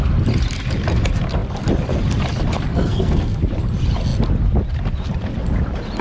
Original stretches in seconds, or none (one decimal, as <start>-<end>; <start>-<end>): 0.0-2.7; 3.4-6.0